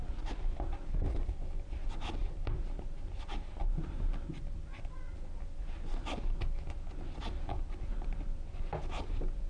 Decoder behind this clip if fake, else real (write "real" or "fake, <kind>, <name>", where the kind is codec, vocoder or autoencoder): real